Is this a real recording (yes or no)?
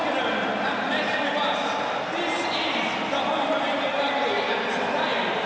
yes